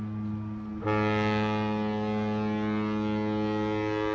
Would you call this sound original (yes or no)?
yes